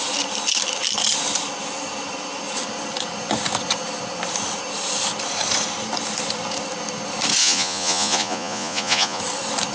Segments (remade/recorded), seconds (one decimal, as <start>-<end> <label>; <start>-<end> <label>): 0.0-7.4 recorded; 7.4-9.2 remade; 9.2-9.7 recorded